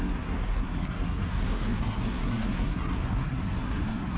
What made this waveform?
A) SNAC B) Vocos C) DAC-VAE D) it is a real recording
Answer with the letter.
A